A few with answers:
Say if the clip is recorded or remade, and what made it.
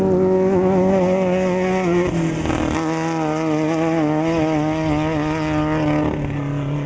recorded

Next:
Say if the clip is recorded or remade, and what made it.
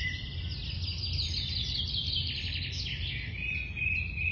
recorded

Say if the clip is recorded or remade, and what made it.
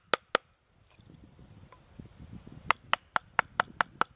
recorded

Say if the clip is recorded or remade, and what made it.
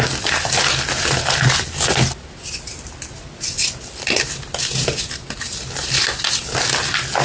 recorded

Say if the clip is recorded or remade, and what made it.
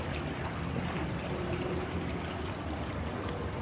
recorded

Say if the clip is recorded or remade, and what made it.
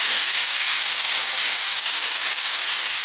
remade, codec, DAC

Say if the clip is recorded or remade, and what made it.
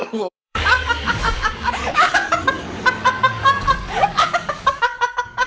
remade, codec, DAC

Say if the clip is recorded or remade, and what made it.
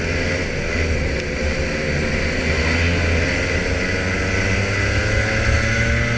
recorded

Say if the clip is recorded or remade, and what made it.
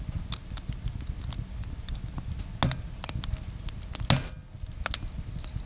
recorded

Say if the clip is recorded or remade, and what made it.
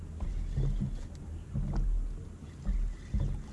recorded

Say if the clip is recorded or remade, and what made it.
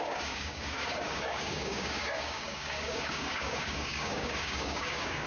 remade, codec, DAC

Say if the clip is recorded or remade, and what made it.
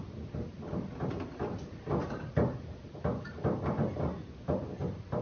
recorded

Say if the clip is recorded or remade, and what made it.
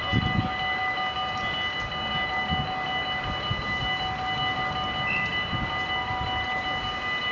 recorded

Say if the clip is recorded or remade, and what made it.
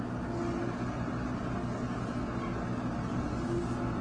recorded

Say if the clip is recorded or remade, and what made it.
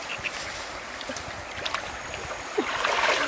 recorded